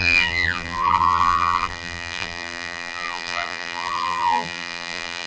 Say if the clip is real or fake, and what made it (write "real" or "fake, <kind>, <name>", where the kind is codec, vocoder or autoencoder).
fake, vocoder, BigVGAN v2